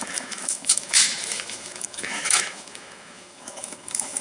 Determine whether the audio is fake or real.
fake